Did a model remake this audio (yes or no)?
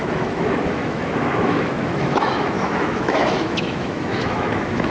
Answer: yes